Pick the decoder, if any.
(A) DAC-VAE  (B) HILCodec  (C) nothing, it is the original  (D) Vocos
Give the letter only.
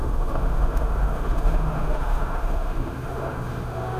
A